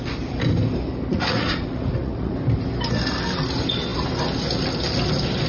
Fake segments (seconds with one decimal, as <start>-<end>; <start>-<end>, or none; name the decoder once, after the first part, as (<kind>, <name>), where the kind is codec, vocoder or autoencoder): 1.1-2.3 (vocoder, Vocos)